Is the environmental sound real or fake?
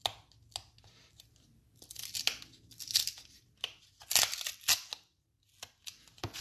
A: real